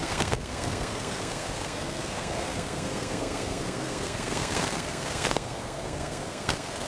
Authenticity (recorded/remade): remade